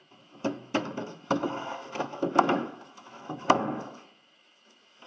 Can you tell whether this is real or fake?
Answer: fake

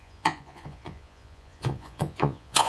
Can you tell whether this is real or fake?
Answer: fake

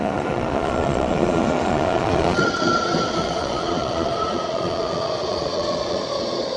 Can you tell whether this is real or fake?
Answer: fake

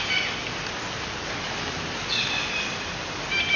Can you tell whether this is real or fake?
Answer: real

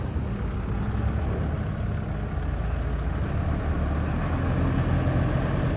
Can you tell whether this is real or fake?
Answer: real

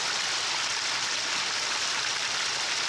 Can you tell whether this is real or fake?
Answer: real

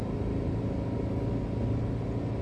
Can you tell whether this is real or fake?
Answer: real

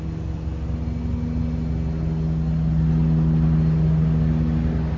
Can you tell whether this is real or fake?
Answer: real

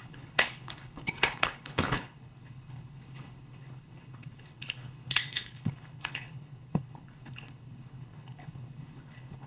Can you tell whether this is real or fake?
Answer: fake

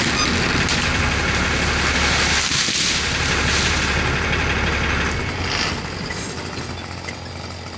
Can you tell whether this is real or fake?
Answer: real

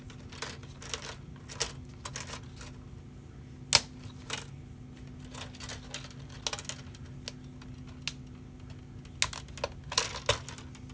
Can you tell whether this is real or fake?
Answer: real